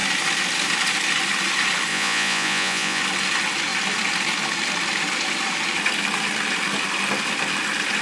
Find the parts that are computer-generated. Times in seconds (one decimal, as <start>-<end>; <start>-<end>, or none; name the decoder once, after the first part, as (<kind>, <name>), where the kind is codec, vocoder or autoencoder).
1.9-3.0 (vocoder, Vocos)